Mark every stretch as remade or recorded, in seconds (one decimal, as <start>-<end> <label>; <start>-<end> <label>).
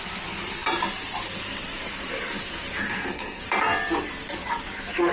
0.0-2.8 recorded; 2.8-3.4 remade; 3.4-5.1 recorded